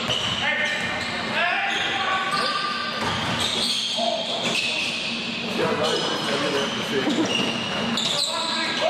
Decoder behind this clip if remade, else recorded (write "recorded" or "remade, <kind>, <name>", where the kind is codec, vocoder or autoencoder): recorded